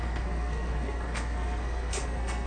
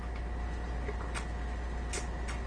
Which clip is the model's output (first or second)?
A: first